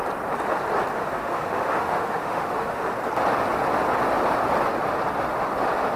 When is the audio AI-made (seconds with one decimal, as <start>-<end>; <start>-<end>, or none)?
1.0-2.8